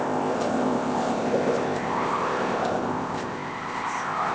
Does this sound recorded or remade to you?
remade